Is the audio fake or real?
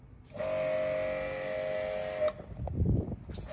real